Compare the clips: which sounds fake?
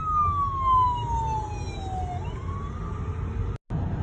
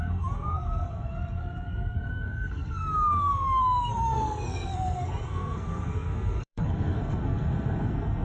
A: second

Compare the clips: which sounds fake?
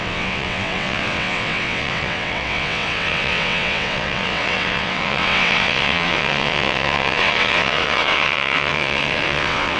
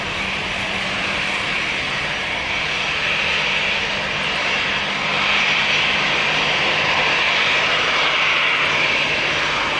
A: first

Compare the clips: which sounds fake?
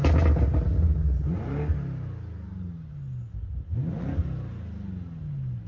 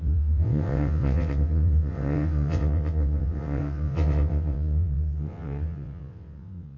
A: second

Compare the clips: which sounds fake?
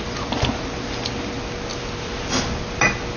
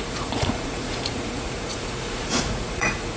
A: second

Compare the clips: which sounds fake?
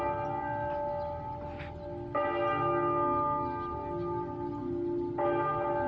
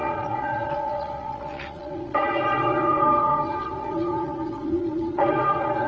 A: second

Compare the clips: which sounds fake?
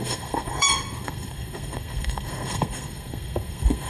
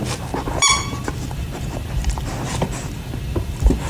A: first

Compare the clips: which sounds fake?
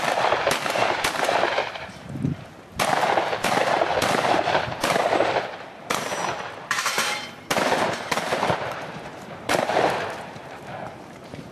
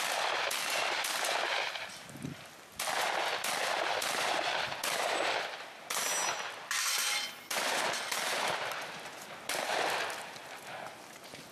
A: first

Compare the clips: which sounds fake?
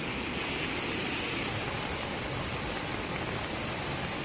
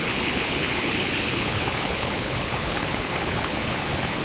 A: second